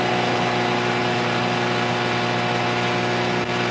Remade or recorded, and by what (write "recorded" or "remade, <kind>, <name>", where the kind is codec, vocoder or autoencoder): recorded